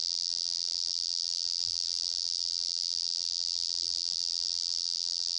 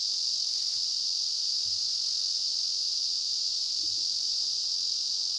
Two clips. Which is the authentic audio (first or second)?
second